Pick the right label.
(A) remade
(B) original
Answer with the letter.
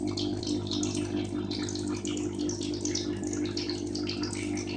B